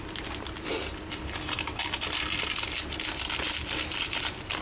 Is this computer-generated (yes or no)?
no